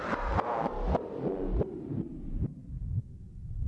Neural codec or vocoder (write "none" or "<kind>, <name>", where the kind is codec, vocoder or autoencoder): vocoder, BigVGAN v2